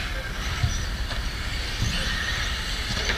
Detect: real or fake real